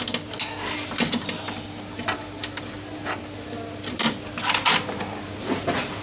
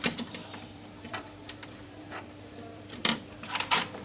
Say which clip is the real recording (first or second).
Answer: first